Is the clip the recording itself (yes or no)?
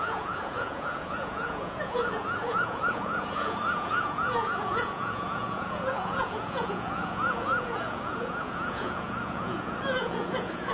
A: no